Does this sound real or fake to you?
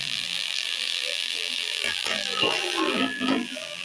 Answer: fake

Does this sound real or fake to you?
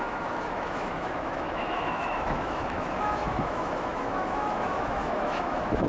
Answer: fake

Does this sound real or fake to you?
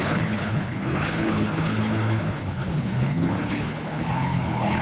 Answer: fake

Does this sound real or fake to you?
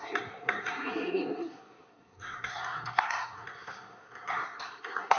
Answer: fake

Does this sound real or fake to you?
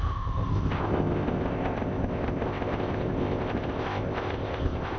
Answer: fake